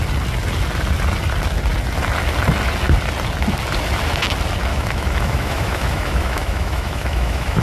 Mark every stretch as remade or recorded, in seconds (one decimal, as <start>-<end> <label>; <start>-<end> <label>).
0.0-4.7 recorded; 4.7-7.6 remade